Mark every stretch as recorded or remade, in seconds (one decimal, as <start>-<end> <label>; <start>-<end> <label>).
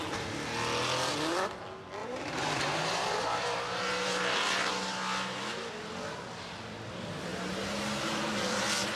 0.0-2.0 recorded; 2.0-4.7 remade; 4.7-7.3 recorded; 7.3-8.3 remade; 8.3-9.0 recorded